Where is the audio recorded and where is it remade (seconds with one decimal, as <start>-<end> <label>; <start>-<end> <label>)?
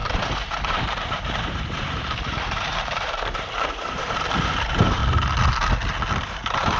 0.0-5.0 remade; 5.0-6.2 recorded; 6.2-6.8 remade